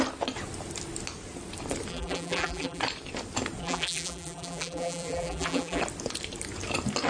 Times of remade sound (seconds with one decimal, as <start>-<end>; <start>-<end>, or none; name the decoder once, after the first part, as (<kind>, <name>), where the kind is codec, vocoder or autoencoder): 1.9-2.8 (vocoder, BigVGAN v2); 3.6-5.8